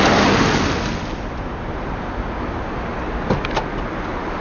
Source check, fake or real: real